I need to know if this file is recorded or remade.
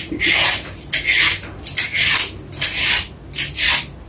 recorded